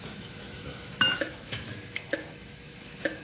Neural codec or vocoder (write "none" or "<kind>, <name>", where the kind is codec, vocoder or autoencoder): autoencoder, DAC-VAE